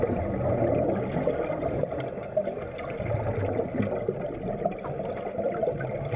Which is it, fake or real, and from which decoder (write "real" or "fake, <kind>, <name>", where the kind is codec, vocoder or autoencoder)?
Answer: real